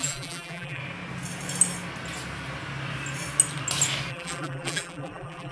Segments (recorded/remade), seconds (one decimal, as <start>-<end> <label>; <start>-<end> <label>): 0.0-0.8 remade; 0.8-4.1 recorded; 4.1-5.5 remade